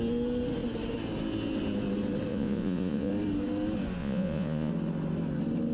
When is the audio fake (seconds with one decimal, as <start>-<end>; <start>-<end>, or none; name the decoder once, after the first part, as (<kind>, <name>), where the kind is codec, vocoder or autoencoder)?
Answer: 2.3-3.1 (vocoder, Vocos); 4.0-4.7